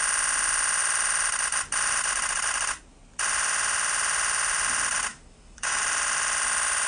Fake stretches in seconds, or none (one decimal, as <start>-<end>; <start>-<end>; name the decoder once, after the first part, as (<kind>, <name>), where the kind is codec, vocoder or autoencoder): 5.1-5.8 (autoencoder, DAC-VAE)